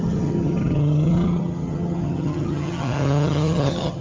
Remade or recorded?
remade